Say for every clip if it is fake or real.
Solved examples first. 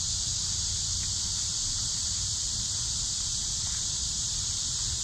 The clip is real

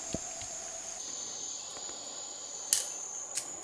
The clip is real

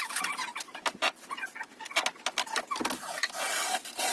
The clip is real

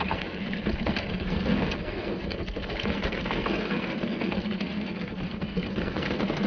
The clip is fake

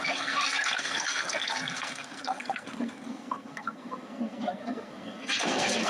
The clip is fake